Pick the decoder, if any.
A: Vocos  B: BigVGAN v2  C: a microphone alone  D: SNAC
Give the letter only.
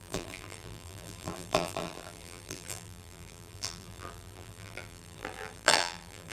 B